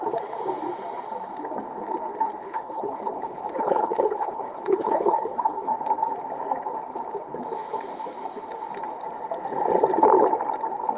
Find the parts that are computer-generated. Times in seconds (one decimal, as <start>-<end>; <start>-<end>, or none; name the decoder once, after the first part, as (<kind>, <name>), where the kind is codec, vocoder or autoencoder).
2.4-5.7 (codec, HILCodec)